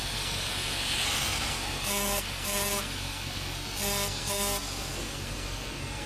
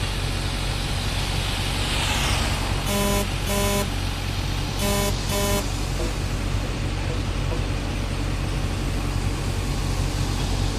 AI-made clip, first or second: first